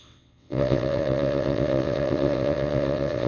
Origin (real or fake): fake